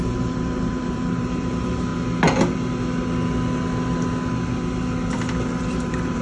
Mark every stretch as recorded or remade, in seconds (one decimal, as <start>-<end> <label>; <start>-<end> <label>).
0.0-1.9 remade; 1.9-5.6 recorded; 5.6-6.2 remade